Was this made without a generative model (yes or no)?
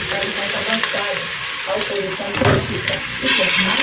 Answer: yes